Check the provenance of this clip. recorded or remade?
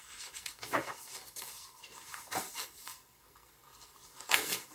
remade